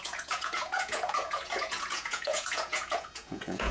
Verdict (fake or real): fake